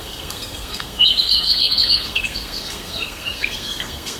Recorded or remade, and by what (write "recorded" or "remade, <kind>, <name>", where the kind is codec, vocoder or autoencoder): remade, codec, SNAC